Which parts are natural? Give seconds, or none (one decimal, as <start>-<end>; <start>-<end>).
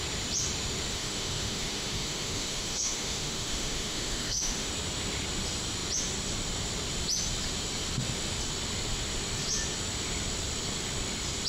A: 0.0-0.9; 4.7-11.5